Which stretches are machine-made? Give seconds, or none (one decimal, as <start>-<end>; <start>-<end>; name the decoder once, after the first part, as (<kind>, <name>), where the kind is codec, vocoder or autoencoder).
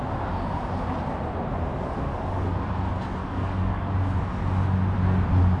1.7-2.7 (codec, DAC); 3.2-3.9